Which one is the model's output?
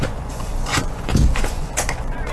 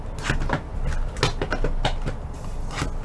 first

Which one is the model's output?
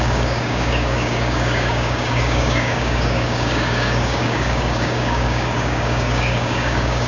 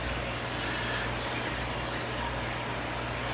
first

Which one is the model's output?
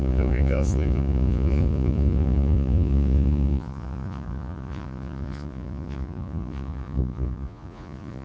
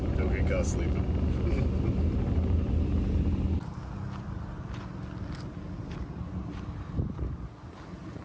first